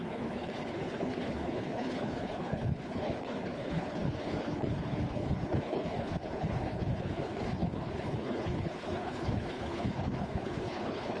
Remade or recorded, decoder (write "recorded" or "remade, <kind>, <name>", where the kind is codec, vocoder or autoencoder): remade, codec, HILCodec